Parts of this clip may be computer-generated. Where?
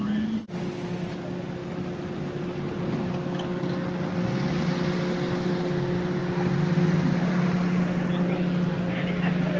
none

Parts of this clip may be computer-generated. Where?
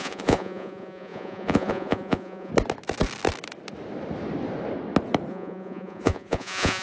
0.0-2.5 (vocoder, Vocos); 5.3-6.8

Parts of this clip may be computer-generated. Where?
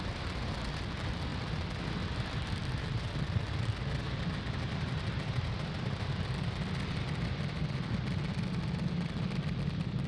none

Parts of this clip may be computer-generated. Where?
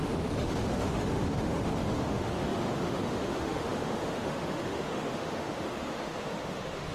0.0-6.9 (autoencoder, DAC-VAE)